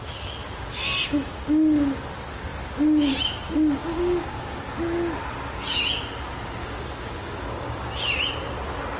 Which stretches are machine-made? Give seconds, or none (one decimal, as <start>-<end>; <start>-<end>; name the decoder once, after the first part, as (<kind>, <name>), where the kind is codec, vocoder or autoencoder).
3.8-4.6 (codec, DAC); 6.6-7.9